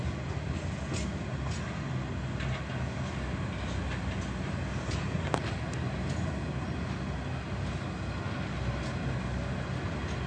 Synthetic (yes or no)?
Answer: no